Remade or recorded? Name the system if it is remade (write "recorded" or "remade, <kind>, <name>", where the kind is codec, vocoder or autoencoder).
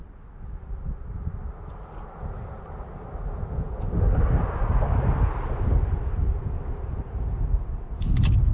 recorded